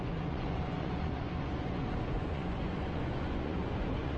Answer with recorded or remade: remade